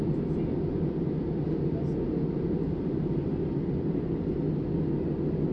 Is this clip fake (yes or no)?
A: no